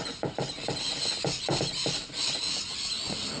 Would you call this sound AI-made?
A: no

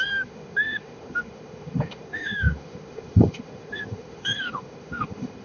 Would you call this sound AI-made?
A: yes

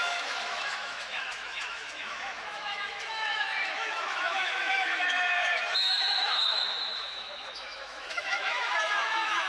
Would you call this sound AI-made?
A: yes